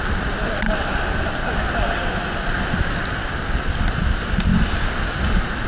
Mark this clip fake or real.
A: real